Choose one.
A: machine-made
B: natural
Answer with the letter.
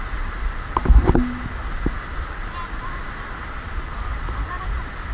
B